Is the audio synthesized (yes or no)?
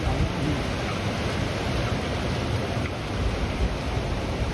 no